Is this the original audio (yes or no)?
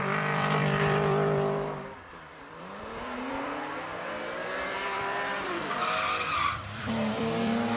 no